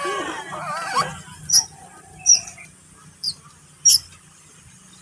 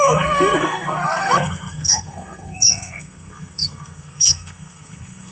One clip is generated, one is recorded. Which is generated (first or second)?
second